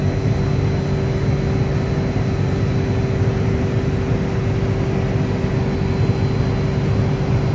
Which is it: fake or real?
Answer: real